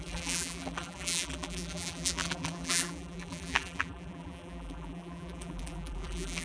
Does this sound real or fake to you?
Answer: fake